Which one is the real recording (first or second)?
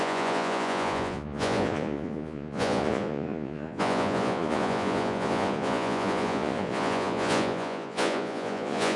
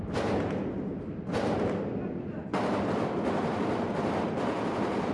second